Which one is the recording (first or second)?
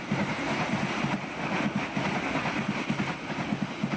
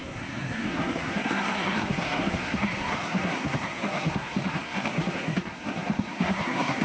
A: first